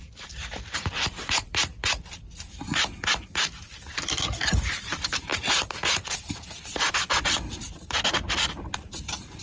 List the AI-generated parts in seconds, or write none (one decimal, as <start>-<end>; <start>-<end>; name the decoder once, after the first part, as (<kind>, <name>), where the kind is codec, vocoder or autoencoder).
0.0-1.7 (vocoder, BigVGAN v2); 4.4-9.4